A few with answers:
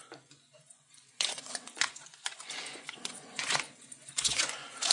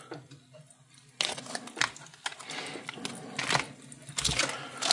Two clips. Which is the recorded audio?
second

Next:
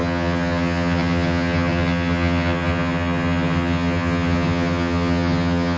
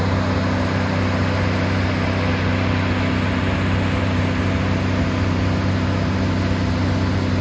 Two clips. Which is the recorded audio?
second